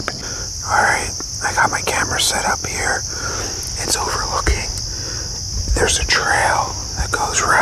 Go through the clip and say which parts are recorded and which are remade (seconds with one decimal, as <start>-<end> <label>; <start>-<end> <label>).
0.0-7.6 recorded

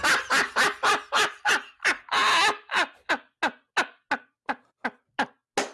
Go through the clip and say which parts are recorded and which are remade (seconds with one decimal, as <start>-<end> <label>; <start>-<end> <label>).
0.0-5.7 recorded